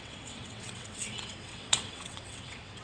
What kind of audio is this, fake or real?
fake